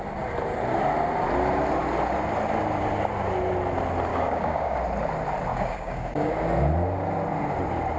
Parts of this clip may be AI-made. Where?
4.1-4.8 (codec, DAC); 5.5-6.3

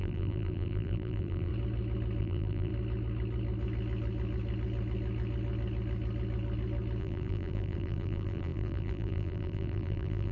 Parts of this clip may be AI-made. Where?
0.0-1.5 (vocoder, BigVGAN v2); 2.2-2.7; 7.0-10.3

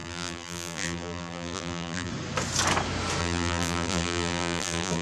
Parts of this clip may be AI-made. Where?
0.0-2.1 (vocoder, BigVGAN v2); 3.2-5.0

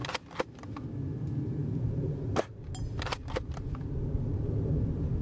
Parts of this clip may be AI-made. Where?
none

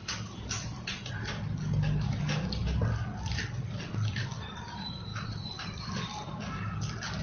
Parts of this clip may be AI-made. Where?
2.6-4.5 (vocoder, BigVGAN v2); 5.1-5.8

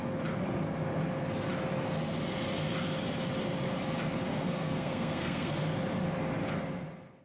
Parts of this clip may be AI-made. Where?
4.2-5.5 (codec, SNAC)

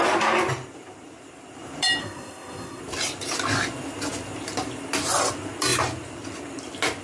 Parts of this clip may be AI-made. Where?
2.0-2.8 (codec, SNAC)

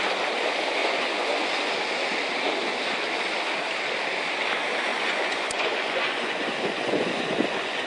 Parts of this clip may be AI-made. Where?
0.8-1.7 (vocoder, Vocos); 4.9-7.9